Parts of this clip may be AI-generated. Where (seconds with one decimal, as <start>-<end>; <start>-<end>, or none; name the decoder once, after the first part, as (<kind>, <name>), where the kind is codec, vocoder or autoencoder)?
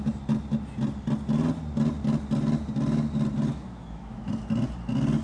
3.5-4.3 (autoencoder, DAC-VAE)